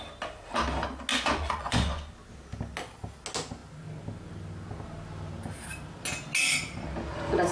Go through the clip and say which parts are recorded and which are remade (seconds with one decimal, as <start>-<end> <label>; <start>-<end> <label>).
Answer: 0.0-1.1 recorded; 1.1-2.1 remade; 2.1-7.5 recorded